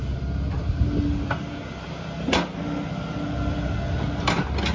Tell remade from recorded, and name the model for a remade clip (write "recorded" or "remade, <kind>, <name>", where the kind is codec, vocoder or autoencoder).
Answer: recorded